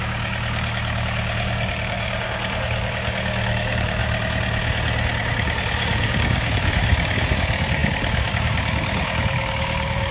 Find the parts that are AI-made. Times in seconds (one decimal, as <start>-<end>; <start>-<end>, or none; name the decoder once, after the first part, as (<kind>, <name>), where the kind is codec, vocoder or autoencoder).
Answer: 0.0-4.0 (codec, DAC); 5.3-10.1

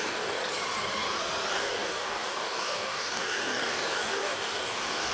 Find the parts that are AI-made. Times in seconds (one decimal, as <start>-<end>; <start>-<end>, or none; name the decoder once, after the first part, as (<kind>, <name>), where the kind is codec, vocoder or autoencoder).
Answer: 0.0-0.4 (codec, DAC); 1.5-5.1

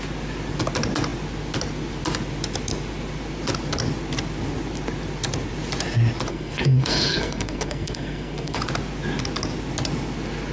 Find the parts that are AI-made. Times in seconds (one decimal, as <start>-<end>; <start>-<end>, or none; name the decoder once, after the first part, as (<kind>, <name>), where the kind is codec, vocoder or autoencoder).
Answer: 6.3-8.6 (codec, SNAC)

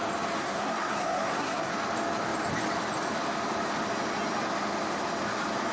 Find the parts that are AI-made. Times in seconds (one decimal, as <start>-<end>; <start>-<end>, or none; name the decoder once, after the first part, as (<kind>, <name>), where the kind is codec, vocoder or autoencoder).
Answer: 0.4-1.7 (codec, SNAC)

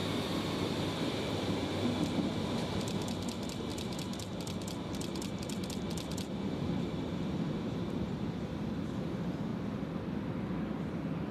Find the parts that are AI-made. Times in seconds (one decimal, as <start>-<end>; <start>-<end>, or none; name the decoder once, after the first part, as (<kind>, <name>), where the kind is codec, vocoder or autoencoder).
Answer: 0.6-9.5 (vocoder, BigVGAN v2); 10.6-11.3